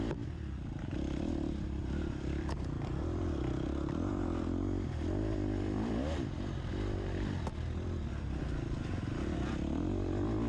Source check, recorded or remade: remade